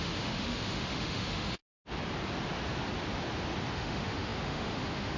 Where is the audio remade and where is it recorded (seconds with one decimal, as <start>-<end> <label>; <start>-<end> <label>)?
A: 0.0-1.6 remade; 1.6-3.7 recorded; 3.7-5.2 remade